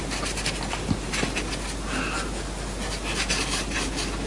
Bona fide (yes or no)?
yes